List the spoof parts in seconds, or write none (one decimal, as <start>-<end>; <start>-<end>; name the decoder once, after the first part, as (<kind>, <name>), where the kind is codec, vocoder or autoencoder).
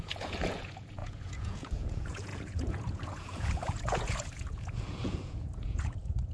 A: 0.0-6.3 (vocoder, Vocos)